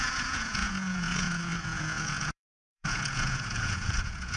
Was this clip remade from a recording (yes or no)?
yes